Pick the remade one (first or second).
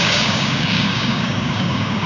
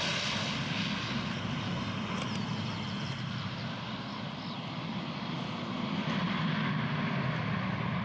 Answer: first